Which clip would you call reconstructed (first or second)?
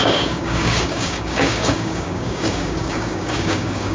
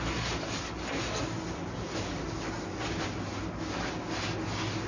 first